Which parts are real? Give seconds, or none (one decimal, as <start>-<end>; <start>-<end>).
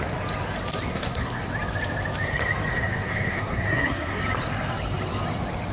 0.0-0.9; 1.5-2.7; 4.2-5.7